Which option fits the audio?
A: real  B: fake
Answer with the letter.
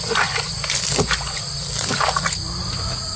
A